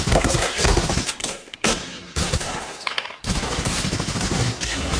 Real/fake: fake